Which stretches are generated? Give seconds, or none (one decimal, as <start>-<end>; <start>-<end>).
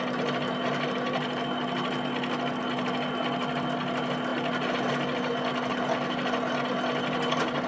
none